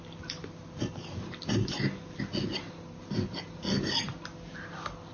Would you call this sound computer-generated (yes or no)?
no